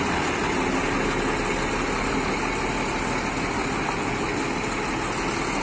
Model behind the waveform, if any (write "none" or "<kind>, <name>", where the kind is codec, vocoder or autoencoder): none